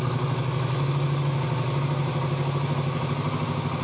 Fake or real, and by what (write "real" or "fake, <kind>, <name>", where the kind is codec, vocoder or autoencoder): real